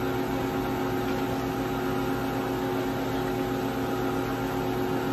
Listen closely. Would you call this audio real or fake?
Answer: real